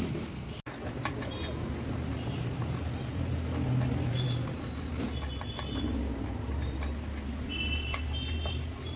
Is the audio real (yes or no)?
yes